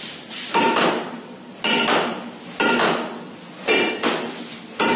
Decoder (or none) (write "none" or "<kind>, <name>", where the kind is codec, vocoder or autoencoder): none